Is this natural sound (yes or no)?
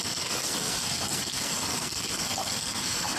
no